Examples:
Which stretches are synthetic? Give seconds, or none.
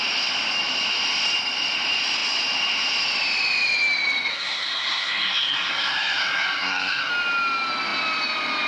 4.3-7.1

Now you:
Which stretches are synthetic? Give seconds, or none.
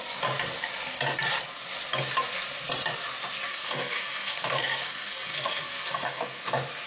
3.5-6.4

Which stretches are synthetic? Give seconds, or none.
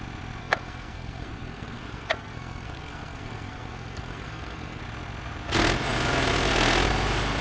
0.4-4.8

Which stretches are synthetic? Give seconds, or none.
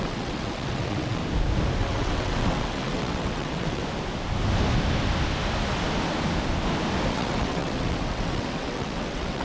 0.0-1.2; 1.8-3.8; 7.1-9.4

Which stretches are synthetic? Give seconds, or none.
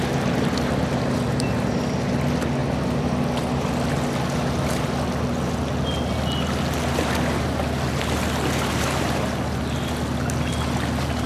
none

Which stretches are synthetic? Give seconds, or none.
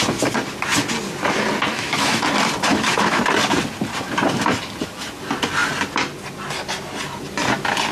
1.7-2.2; 2.7-3.2